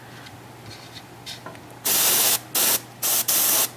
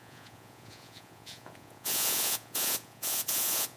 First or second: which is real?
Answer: first